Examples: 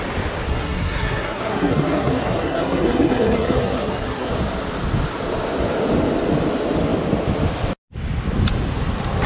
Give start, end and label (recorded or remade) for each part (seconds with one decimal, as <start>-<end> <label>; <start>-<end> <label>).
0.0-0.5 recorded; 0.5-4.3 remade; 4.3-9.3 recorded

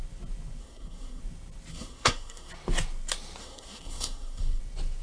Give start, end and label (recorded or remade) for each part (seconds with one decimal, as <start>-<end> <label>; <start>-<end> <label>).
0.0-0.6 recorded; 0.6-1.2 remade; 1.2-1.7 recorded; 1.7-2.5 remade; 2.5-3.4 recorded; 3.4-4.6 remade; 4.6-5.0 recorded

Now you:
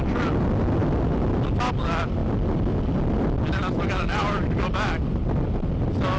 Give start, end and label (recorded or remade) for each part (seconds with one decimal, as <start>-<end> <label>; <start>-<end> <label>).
0.0-6.2 recorded

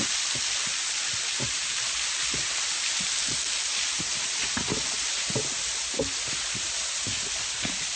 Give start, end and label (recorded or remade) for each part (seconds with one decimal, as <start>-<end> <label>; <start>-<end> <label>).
0.0-8.0 recorded

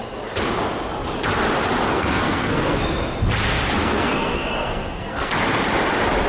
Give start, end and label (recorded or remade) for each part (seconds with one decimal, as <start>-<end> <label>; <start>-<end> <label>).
0.0-1.9 recorded; 1.9-2.8 remade; 2.8-3.8 recorded; 3.8-5.3 remade; 5.3-6.3 recorded

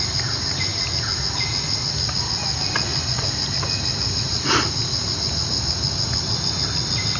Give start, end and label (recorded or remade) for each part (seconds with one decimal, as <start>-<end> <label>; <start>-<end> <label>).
0.0-7.2 recorded

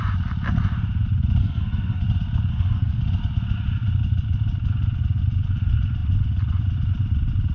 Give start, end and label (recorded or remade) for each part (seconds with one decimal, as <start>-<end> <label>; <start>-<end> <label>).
0.0-1.4 recorded; 1.4-2.0 remade; 2.0-2.5 recorded; 2.5-3.0 remade; 3.0-7.5 recorded